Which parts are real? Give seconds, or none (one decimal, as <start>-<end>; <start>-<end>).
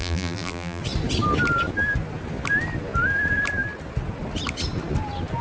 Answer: 0.8-5.4